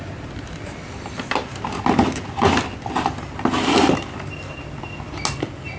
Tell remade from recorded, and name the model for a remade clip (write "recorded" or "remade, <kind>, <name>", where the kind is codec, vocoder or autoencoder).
recorded